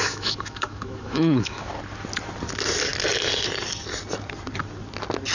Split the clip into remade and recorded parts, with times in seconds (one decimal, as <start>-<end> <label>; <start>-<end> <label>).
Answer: 0.0-1.7 remade; 1.7-5.3 recorded